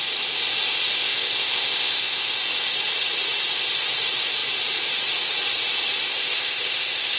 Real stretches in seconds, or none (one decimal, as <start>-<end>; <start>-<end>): 0.0-1.0; 2.4-6.1